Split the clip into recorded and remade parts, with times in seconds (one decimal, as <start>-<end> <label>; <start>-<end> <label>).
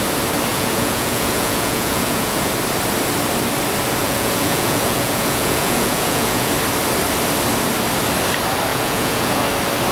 0.0-0.5 recorded; 0.5-2.5 remade; 2.5-4.0 recorded; 4.0-6.5 remade; 6.5-8.7 recorded; 8.7-9.4 remade; 9.4-9.9 recorded